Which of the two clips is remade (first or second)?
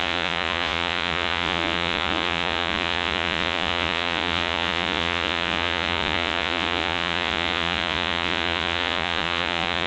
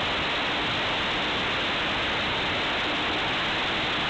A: first